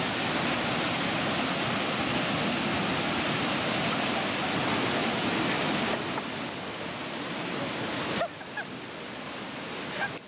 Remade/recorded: recorded